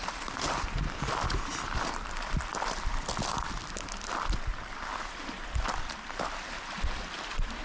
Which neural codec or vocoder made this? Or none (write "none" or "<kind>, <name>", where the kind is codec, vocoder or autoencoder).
vocoder, BigVGAN v2